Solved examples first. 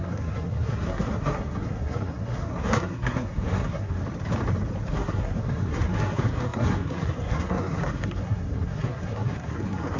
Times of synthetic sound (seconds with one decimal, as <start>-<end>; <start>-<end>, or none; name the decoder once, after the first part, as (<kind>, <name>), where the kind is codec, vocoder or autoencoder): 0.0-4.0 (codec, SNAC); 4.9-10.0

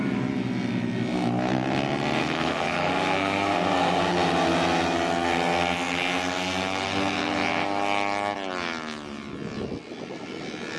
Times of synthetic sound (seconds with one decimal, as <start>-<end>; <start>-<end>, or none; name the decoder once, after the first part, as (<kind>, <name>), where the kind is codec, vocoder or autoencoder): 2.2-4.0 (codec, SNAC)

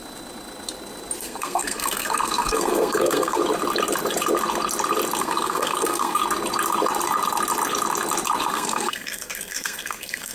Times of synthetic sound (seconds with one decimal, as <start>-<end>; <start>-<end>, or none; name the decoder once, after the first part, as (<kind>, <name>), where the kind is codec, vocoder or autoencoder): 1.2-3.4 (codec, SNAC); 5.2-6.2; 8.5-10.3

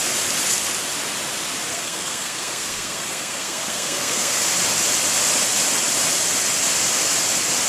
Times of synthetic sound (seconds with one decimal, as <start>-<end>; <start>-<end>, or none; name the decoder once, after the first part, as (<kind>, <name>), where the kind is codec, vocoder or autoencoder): 1.7-4.4 (codec, SNAC)

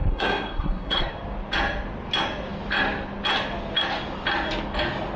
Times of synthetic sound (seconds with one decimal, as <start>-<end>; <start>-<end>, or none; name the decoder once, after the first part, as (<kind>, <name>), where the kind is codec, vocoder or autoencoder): 0.0-1.1 (codec, SNAC)